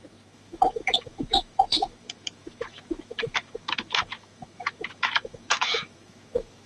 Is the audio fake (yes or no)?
yes